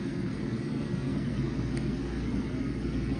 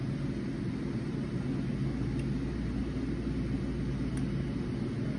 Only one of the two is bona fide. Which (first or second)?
second